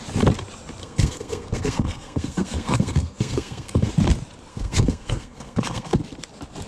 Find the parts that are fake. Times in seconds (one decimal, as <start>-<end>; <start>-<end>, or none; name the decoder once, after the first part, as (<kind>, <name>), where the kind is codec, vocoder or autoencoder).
0.8-3.9 (codec, SNAC); 4.5-6.0